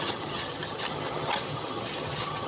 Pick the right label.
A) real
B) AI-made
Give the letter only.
B